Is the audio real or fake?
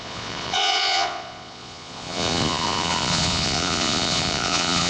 fake